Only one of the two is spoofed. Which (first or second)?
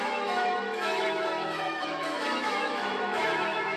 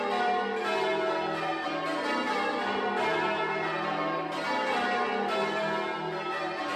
first